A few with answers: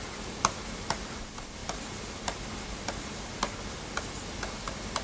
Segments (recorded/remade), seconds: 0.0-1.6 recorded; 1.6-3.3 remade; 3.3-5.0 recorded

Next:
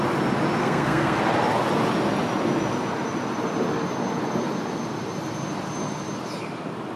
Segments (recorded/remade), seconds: 0.0-0.6 recorded; 0.6-1.2 remade; 1.2-7.0 recorded

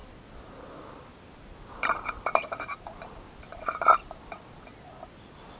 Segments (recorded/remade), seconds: 0.0-5.6 recorded

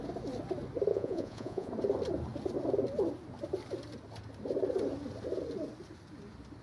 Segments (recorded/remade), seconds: 0.0-0.9 recorded; 0.9-1.7 remade; 1.7-6.6 recorded

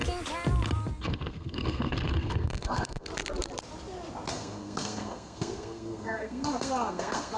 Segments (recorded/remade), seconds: 0.0-1.0 recorded; 1.0-3.1 remade; 3.1-4.3 recorded; 4.3-7.4 remade

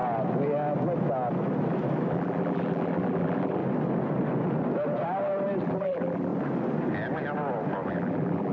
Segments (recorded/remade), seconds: 0.0-2.1 recorded; 2.1-3.6 remade; 3.6-5.6 recorded; 5.6-6.3 remade; 6.3-7.9 recorded; 7.9-8.5 remade